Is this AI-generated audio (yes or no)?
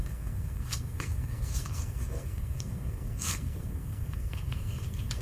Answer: yes